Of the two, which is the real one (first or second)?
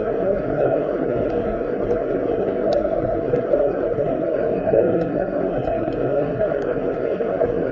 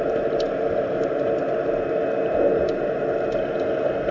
second